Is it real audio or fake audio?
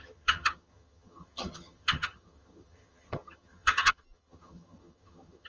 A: fake